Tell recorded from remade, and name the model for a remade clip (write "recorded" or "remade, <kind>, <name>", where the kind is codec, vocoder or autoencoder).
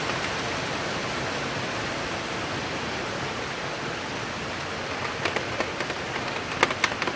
recorded